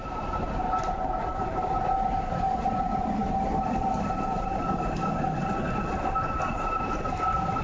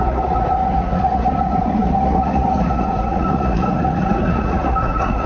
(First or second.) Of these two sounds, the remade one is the second